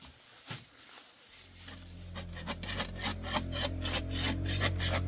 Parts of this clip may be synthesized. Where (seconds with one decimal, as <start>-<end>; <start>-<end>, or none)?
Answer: none

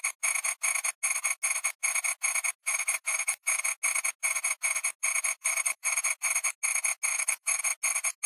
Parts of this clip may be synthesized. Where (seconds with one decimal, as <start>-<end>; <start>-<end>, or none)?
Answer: 2.6-3.6; 5.4-6.0; 7.1-7.6

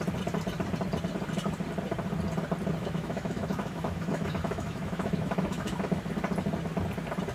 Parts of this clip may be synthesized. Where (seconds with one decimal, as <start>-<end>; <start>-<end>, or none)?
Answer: 2.8-6.0

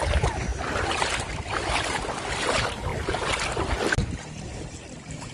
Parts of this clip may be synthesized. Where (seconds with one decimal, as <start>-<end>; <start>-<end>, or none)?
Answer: none